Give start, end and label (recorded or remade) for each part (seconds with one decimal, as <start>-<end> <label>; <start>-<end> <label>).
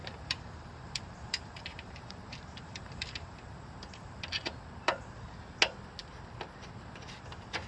0.0-4.6 remade; 4.6-7.7 recorded